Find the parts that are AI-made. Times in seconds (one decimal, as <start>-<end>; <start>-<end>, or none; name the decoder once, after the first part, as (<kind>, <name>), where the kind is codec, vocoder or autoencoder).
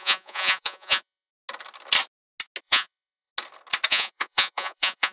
0.0-1.3 (vocoder, Vocos); 2.6-3.3; 3.9-5.1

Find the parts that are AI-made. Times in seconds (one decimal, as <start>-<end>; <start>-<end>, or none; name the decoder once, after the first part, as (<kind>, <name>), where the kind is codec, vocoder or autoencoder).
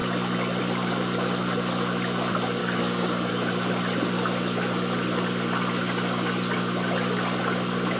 2.6-3.3 (codec, DAC)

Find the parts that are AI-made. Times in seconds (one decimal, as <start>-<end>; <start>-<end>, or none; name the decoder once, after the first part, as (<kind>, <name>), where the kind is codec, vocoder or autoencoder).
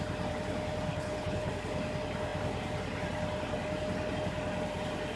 0.9-1.5 (codec, HILCodec)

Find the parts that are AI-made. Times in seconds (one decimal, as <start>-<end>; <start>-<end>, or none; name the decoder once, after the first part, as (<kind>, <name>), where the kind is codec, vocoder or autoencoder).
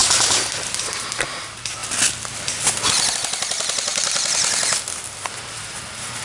none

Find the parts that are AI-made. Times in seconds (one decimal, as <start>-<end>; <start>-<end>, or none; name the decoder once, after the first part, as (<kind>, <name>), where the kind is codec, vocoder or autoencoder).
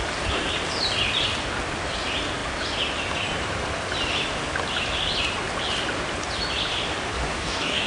7.3-7.9 (codec, DAC)